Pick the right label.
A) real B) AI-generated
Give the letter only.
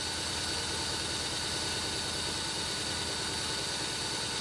A